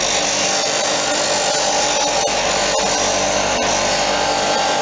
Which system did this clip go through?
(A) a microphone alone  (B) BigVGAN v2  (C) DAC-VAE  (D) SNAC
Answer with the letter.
A